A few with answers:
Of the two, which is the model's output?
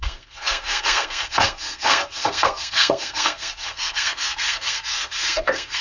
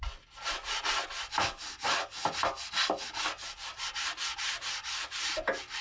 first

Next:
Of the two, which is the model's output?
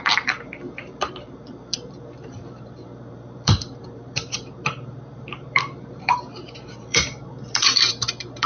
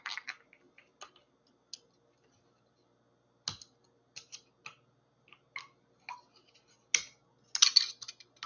first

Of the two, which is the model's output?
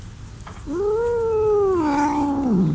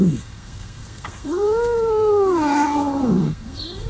second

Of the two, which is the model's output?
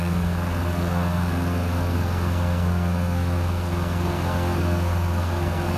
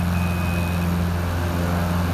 first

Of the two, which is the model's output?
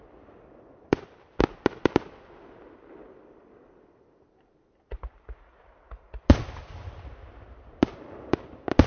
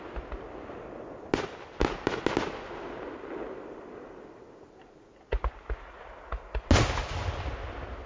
first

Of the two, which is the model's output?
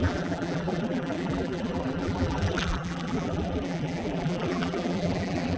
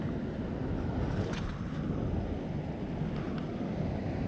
first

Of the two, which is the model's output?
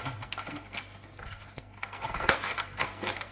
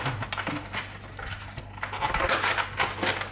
first